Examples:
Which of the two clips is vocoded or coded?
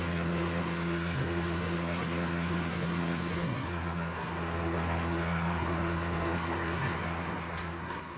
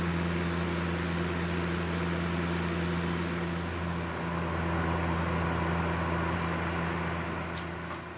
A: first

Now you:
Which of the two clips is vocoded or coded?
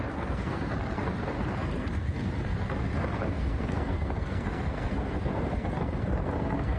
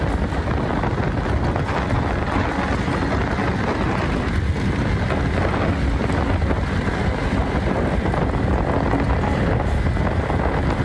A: first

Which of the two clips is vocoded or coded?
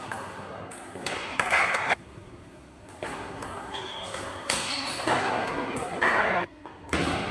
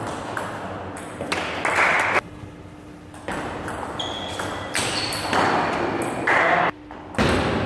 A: first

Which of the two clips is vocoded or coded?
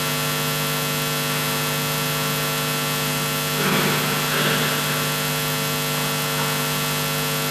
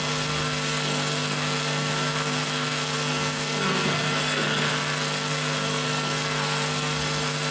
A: second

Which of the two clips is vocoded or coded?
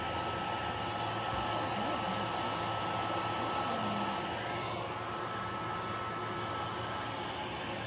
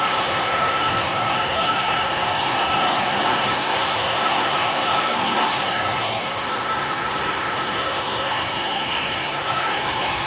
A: second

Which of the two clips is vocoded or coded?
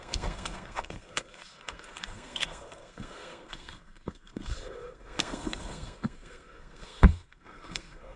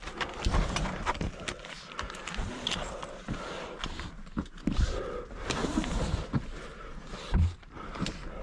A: first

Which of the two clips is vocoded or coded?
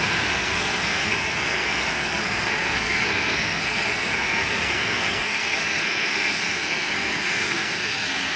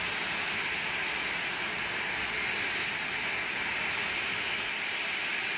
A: first